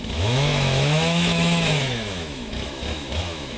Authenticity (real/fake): fake